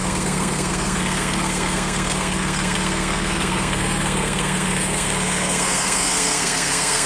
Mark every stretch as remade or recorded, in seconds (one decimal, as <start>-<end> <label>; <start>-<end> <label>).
0.0-7.1 remade